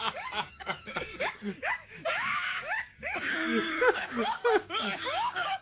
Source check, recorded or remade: remade